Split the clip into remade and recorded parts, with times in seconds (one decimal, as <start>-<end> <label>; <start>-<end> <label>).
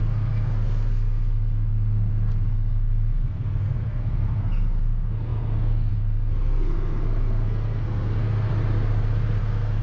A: 0.0-8.5 remade; 8.5-9.4 recorded; 9.4-9.8 remade